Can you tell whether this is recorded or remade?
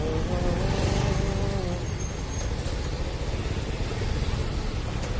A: recorded